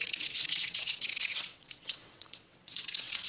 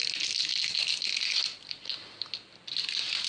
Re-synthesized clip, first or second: first